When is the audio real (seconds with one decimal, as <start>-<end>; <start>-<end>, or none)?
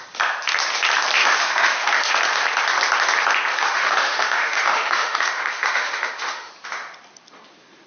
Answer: 0.0-1.2; 2.1-3.5; 6.5-7.9